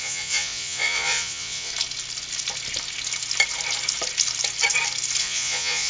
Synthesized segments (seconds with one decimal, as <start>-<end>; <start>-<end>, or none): 0.0-1.7; 5.2-5.9